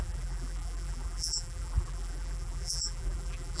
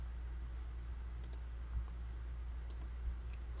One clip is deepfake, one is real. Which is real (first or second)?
second